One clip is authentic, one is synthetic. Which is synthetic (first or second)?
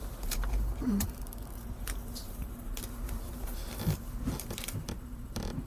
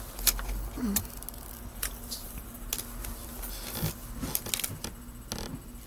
first